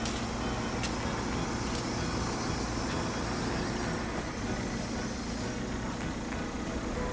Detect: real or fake real